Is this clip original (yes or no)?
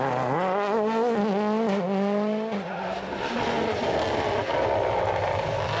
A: yes